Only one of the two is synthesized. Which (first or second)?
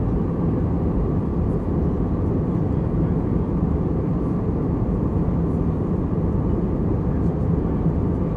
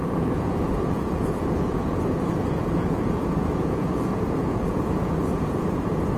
second